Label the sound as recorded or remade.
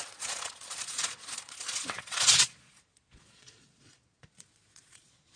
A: remade